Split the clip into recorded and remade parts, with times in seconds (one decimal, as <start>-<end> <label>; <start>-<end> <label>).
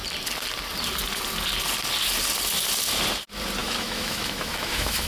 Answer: 0.0-3.6 recorded; 3.6-5.1 remade